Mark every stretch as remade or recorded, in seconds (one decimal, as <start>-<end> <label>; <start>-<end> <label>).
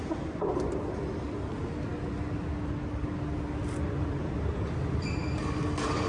0.0-6.1 recorded